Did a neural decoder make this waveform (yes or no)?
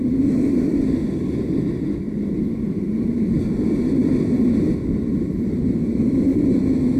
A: no